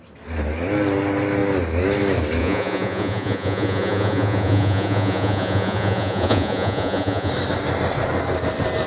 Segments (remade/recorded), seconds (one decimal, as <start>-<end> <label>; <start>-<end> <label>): 0.0-2.4 recorded; 2.4-7.3 remade; 7.3-8.9 recorded